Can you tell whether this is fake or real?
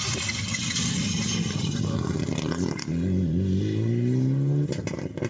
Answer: real